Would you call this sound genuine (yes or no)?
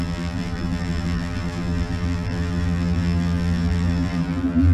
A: no